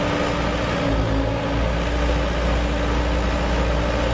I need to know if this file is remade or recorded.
recorded